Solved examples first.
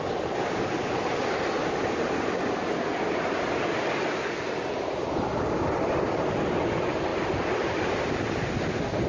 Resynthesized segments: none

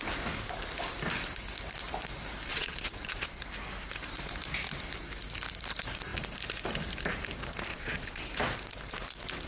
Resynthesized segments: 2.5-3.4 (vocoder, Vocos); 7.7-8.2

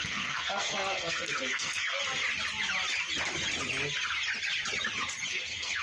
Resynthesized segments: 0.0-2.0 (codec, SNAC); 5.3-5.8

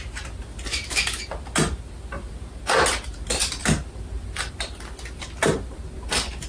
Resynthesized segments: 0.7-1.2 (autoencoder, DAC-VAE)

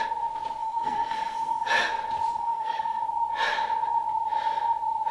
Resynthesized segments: 0.6-1.7 (codec, SNAC); 2.3-3.0

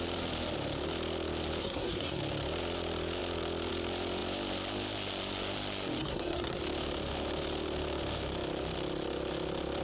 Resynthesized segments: 1.6-2.2 (codec, SNAC); 6.0-6.6

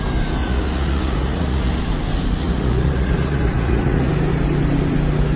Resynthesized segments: 0.4-1.8 (vocoder, Vocos); 2.4-4.1